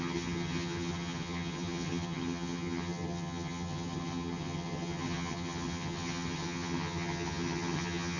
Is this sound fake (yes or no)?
yes